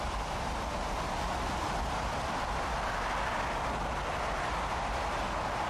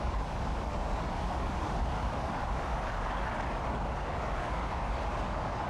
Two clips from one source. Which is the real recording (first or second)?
first